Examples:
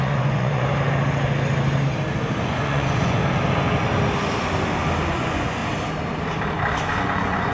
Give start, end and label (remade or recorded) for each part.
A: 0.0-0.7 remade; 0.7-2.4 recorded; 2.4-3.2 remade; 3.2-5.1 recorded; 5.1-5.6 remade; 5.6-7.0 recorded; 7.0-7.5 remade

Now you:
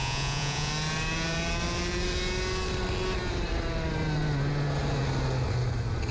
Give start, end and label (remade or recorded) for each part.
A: 0.0-0.7 remade; 0.7-6.1 recorded

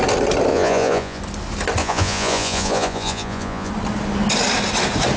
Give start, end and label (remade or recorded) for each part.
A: 0.0-0.5 recorded; 0.5-1.2 remade; 1.2-1.8 recorded; 1.8-3.7 remade; 3.7-5.2 recorded

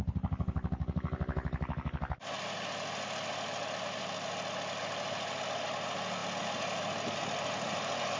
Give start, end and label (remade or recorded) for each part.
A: 0.0-8.2 recorded

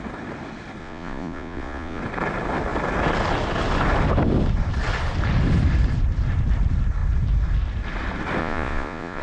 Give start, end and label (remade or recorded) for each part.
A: 0.0-0.8 recorded; 0.8-2.0 remade; 2.0-8.4 recorded; 8.4-9.2 remade

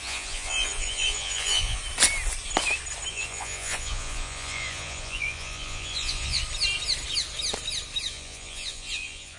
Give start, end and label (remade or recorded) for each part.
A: 0.0-1.8 remade; 1.8-3.1 recorded; 3.1-6.4 remade; 6.4-8.1 recorded; 8.1-9.4 remade

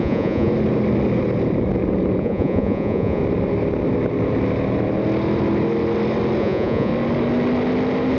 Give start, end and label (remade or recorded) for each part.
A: 0.0-0.5 remade; 0.5-2.2 recorded; 2.2-3.2 remade; 3.2-6.4 recorded; 6.4-6.9 remade; 6.9-8.2 recorded

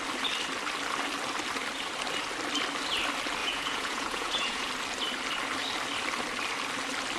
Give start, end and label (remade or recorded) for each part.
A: 0.0-3.4 recorded; 3.4-4.7 remade; 4.7-7.2 recorded